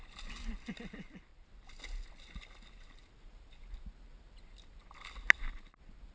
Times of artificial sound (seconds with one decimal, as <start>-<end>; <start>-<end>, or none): 1.3-1.8